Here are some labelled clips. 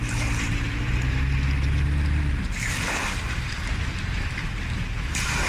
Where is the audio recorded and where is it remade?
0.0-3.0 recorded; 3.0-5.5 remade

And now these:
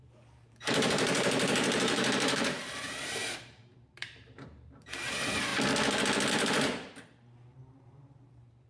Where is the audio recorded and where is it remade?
0.0-5.5 remade; 5.5-6.3 recorded; 6.3-8.7 remade

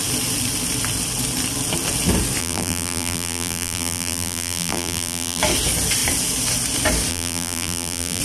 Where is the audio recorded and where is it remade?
0.0-2.4 recorded; 2.4-5.4 remade; 5.4-7.1 recorded; 7.1-8.2 remade

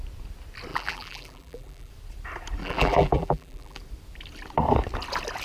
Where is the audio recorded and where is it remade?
0.0-0.7 recorded; 0.7-1.9 remade; 1.9-2.6 recorded; 2.6-3.8 remade; 3.8-5.4 recorded

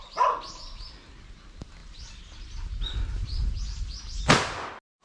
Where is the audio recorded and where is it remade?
0.0-1.8 recorded; 1.8-4.2 remade; 4.2-5.0 recorded

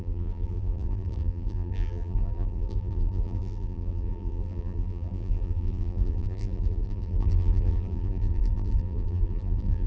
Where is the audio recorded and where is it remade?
0.0-9.9 remade